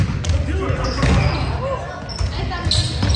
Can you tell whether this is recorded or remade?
recorded